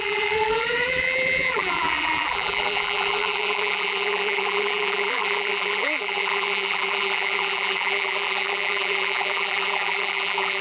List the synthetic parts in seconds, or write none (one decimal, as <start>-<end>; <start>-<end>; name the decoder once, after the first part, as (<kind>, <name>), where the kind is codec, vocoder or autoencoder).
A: 0.0-10.6 (vocoder, BigVGAN v2)